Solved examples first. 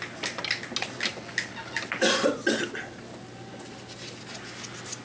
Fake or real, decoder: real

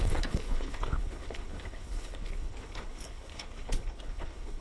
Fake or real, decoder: fake, codec, HILCodec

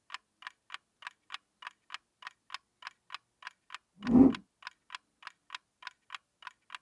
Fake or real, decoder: real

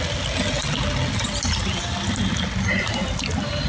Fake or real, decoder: real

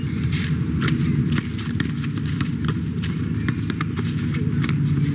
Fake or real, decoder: real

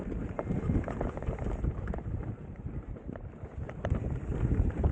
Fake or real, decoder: real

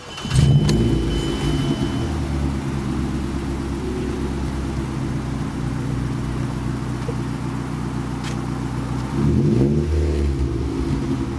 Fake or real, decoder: real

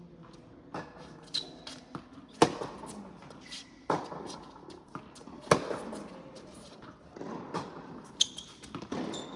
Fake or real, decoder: real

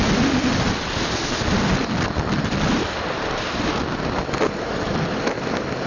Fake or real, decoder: real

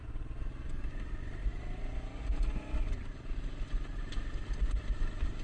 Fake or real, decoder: real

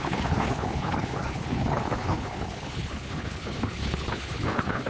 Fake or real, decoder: fake, codec, HILCodec